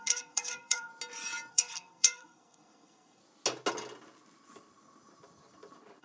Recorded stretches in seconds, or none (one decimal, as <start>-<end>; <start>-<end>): 0.9-1.5; 3.2-6.0